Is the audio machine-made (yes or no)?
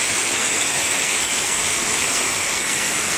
yes